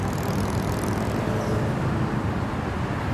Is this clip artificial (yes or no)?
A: no